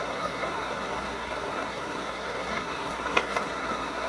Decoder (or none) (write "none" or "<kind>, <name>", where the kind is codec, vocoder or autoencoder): codec, SNAC